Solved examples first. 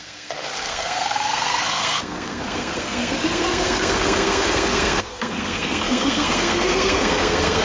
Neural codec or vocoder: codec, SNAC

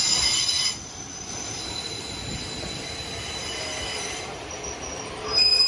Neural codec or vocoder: none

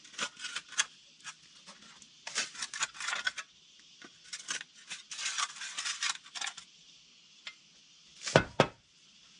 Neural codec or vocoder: none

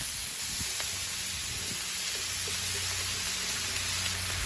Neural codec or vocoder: none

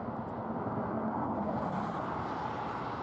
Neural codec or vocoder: none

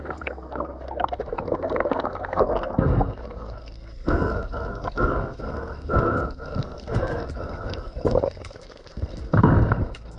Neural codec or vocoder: codec, SNAC